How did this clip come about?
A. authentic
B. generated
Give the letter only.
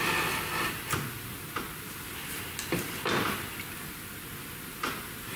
A